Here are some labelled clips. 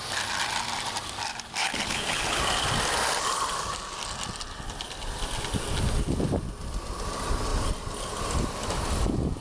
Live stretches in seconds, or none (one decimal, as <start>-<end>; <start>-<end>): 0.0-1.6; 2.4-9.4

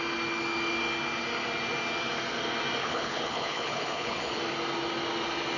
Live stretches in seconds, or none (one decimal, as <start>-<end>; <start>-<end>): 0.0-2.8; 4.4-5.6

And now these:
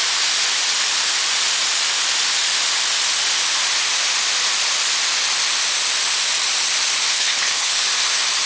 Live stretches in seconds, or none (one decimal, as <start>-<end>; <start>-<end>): 0.0-7.1; 7.8-8.5